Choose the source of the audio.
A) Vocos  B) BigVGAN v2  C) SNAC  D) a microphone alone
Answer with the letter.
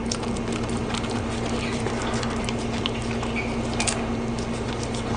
D